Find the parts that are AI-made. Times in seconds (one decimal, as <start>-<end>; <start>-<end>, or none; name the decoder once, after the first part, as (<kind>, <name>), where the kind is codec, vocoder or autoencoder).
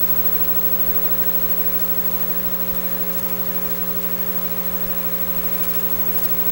none